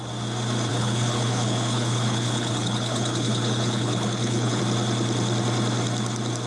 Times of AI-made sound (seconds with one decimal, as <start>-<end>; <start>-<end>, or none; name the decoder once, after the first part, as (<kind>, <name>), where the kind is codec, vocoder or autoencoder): 0.7-4.6 (codec, HILCodec)